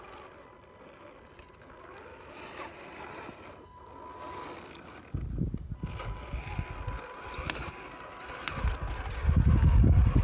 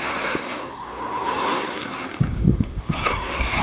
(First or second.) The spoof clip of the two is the second